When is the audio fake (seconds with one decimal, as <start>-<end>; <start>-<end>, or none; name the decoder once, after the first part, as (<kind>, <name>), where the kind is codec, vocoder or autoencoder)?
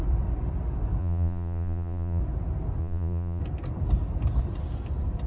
1.0-2.2 (vocoder, Vocos); 2.8-3.4